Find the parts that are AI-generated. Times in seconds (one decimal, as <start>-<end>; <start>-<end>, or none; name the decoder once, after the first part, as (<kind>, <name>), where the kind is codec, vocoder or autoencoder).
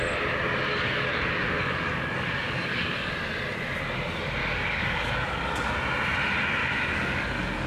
0.7-3.1 (codec, DAC); 4.4-5.7; 6.6-7.7